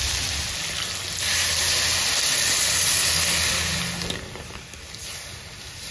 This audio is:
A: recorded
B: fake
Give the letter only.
A